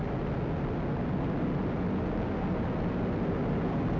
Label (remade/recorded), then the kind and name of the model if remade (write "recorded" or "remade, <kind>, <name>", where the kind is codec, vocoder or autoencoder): recorded